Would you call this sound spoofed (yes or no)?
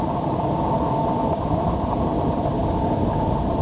no